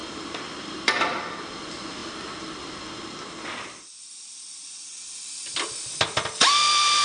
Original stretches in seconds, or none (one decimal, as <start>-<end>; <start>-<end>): 0.0-0.6; 2.0-4.0